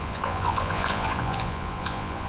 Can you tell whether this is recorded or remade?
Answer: remade